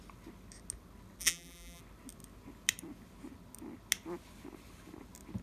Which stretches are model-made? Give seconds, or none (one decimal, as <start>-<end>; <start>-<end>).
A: 1.2-1.8